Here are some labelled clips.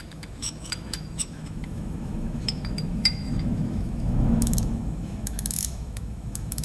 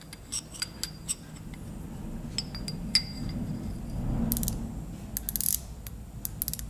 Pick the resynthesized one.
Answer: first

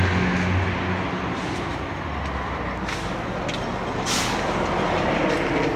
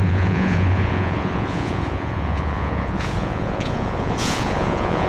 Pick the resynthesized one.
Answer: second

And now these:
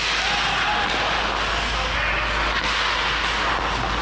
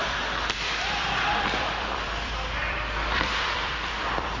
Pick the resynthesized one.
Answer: second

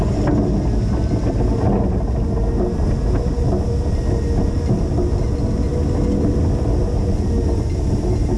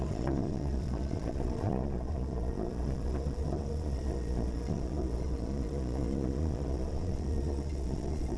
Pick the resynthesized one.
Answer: second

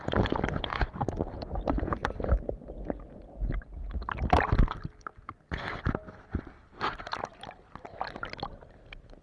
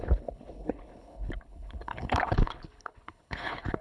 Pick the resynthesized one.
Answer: second